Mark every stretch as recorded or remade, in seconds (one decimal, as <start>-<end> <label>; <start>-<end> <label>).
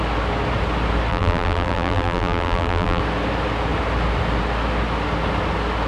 0.0-1.1 recorded; 1.1-3.0 remade; 3.0-5.9 recorded